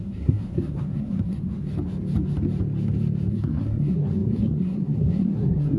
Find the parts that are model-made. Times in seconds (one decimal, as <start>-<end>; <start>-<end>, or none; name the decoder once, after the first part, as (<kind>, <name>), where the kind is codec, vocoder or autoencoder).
0.0-1.7 (codec, SNAC); 3.3-5.8